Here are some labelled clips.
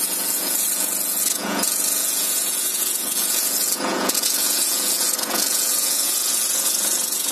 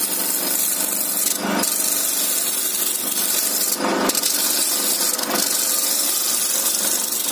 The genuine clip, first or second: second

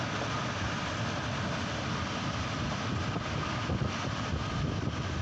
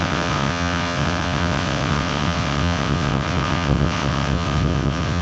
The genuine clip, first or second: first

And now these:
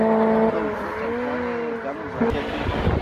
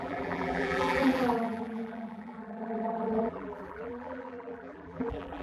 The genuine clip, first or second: first